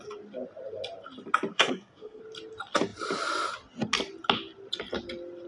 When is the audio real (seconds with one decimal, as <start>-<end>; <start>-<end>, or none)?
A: 0.0-1.5; 2.2-5.5